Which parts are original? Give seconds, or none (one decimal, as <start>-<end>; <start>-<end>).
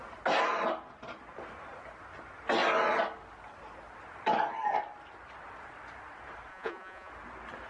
0.0-6.5; 7.1-7.7